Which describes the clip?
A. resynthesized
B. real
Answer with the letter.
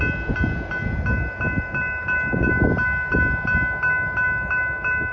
B